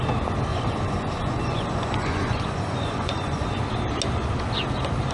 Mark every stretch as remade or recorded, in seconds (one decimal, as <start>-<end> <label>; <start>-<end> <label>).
0.0-0.5 recorded; 0.5-3.6 remade; 3.6-5.1 recorded